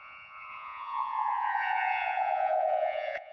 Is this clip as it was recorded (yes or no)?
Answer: no